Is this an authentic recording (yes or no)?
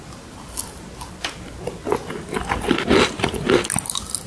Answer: yes